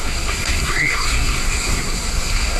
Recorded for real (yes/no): no